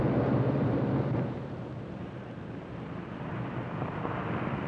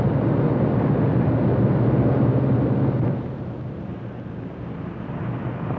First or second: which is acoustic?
second